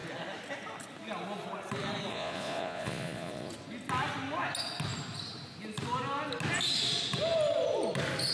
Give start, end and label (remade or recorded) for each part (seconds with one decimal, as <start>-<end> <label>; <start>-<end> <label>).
0.0-2.1 recorded; 2.1-3.5 remade; 3.5-8.3 recorded